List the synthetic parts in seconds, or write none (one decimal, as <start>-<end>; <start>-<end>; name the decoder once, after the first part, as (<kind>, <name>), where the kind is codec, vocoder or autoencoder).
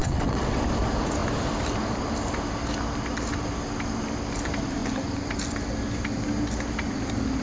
0.0-0.6 (vocoder, WaveNeXt)